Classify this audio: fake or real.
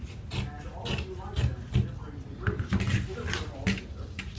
real